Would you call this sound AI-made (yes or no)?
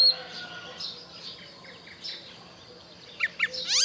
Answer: no